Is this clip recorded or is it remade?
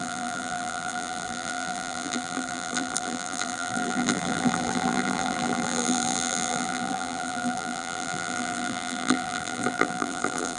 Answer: remade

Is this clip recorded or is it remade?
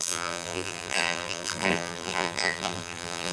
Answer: remade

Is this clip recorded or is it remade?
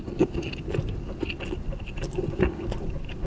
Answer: recorded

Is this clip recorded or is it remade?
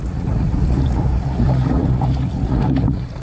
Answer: remade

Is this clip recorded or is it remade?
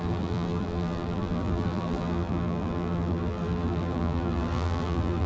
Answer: remade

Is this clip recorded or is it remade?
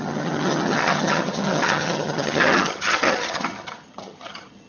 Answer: remade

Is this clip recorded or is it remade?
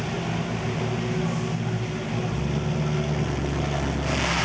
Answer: recorded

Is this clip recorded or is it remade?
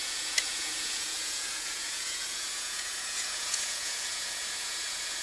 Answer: remade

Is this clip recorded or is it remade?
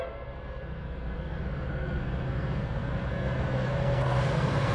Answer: remade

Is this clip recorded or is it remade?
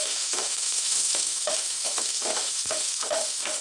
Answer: remade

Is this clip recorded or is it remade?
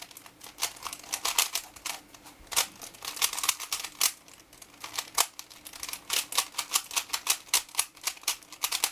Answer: recorded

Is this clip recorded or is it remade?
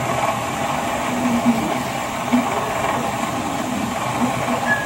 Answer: recorded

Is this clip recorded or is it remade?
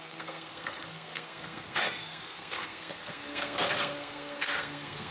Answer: remade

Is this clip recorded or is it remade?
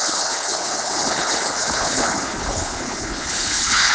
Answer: remade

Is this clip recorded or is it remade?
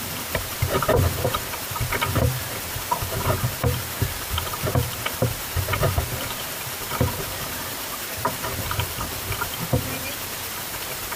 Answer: remade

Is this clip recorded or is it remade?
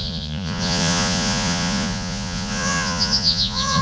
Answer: remade